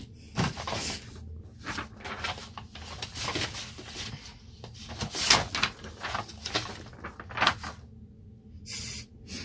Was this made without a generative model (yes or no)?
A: yes